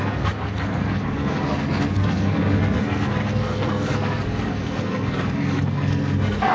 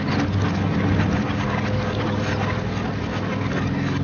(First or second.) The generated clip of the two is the first